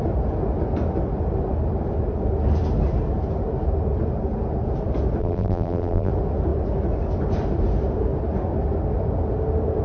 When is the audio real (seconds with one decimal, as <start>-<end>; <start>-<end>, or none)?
0.0-5.2; 6.1-9.8